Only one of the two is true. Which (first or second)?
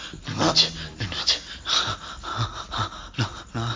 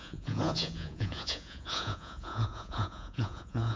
first